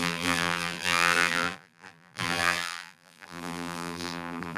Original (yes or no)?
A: no